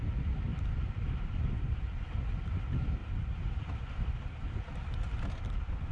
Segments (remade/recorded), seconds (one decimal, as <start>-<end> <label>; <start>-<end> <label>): 0.0-0.5 recorded; 0.5-1.1 remade; 1.1-3.0 recorded; 3.0-5.3 remade; 5.3-5.9 recorded